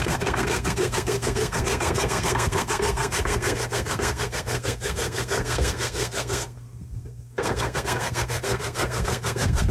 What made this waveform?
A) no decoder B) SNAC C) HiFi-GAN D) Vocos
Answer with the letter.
B